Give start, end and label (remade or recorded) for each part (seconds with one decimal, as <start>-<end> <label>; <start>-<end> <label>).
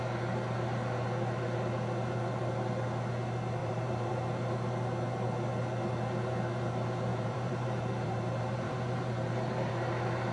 0.0-3.6 recorded; 3.6-4.1 remade; 4.1-7.1 recorded; 7.1-9.7 remade; 9.7-10.3 recorded